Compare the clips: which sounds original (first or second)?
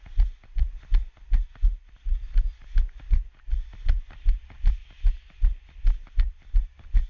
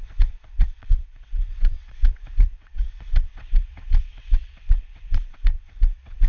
first